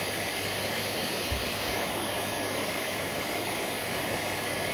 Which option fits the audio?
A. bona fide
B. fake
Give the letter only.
B